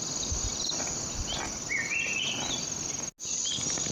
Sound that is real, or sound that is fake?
real